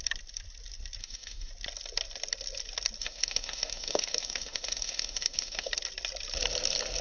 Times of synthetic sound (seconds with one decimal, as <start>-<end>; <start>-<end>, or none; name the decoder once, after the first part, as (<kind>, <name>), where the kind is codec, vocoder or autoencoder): 1.0-1.5 (autoencoder, DAC-VAE); 3.0-5.7